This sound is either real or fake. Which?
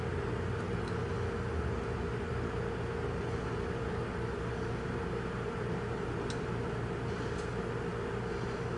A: real